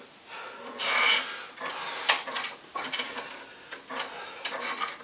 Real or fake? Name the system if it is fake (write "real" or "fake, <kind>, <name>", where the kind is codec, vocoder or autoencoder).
real